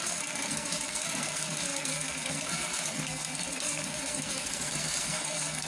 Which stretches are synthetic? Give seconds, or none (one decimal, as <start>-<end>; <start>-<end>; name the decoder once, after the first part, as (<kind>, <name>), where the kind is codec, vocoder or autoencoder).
0.0-5.7 (codec, SNAC)